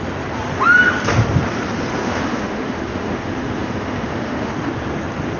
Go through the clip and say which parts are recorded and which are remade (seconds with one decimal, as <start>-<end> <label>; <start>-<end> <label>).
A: 0.0-2.0 recorded; 2.0-4.5 remade; 4.5-5.4 recorded